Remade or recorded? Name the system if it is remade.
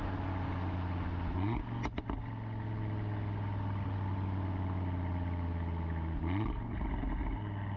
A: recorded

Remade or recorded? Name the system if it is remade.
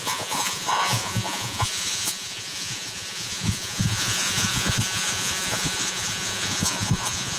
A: remade, vocoder, Vocos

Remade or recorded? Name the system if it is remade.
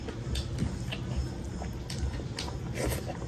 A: recorded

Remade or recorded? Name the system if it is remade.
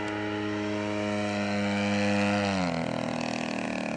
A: recorded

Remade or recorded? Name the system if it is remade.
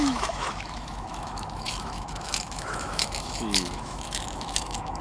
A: remade, autoencoder, DAC-VAE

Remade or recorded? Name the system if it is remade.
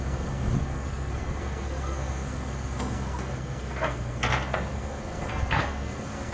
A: remade, codec, SNAC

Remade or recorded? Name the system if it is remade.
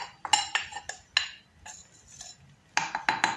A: recorded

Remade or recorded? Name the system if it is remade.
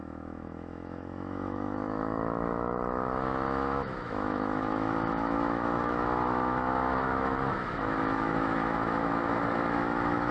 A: remade, autoencoder, DAC-VAE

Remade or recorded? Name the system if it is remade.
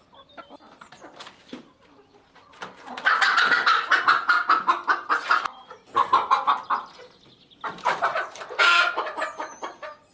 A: recorded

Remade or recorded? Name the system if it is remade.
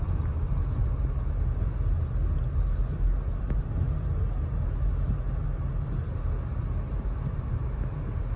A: recorded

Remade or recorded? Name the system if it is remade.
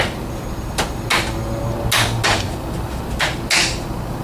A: recorded